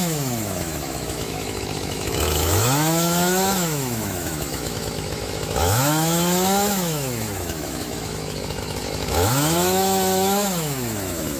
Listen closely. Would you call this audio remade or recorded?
remade